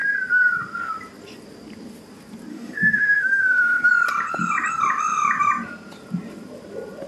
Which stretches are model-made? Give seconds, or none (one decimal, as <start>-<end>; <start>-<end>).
2.5-3.9